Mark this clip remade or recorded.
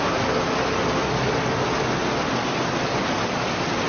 recorded